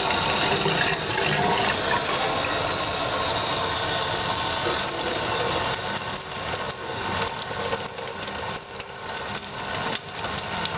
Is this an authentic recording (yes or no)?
yes